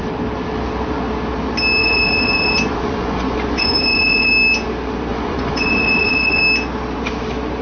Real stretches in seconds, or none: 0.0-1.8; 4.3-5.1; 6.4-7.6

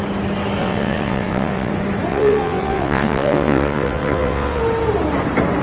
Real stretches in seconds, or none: 0.0-0.6; 1.7-2.1; 4.6-5.6

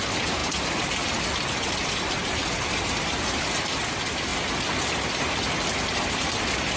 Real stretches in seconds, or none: 0.0-6.8

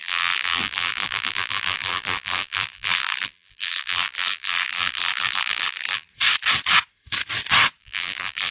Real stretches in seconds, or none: 6.1-7.8

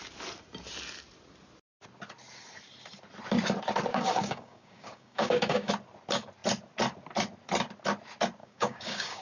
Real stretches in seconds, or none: 0.0-3.9; 5.7-8.4

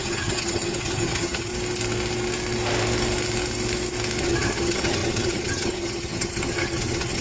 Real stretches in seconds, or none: 1.5-4.2